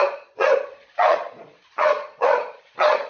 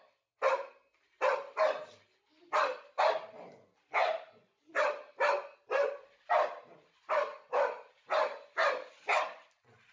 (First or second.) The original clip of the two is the second